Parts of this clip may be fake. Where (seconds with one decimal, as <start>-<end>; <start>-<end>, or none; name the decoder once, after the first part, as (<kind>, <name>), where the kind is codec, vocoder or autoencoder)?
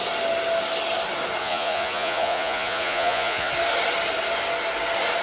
1.4-3.5 (vocoder, Vocos)